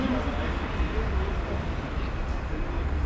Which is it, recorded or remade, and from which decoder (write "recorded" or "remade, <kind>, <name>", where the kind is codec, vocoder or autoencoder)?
recorded